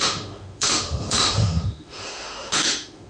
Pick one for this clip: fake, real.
fake